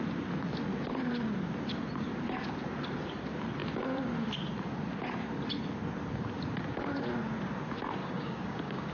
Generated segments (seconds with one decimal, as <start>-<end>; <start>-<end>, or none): 8.0-8.9